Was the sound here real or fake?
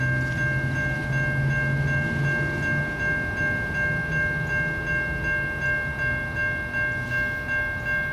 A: real